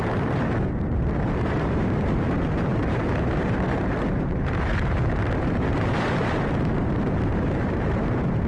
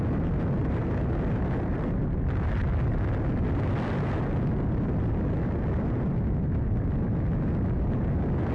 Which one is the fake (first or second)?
first